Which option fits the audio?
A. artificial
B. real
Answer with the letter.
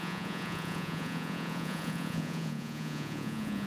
A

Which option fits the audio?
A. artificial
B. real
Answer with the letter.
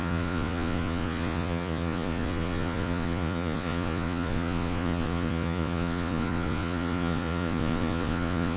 A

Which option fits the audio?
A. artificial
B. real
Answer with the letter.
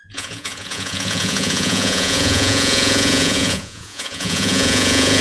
A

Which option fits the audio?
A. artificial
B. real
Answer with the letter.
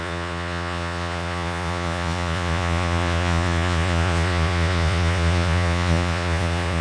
A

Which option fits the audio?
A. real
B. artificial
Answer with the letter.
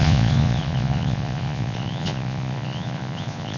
B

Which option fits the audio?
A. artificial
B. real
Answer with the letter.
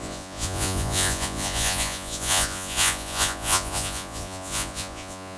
A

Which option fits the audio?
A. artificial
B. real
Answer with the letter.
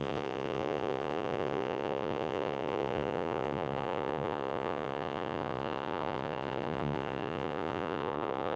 A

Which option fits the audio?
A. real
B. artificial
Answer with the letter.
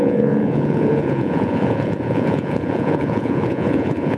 B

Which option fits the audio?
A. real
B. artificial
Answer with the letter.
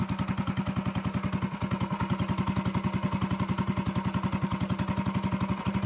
A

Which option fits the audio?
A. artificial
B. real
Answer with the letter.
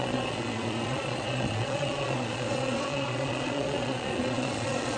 A